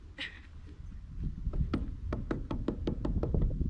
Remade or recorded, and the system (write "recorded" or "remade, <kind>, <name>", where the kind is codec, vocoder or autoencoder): recorded